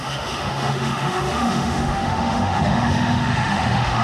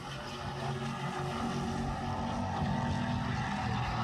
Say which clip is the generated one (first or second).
first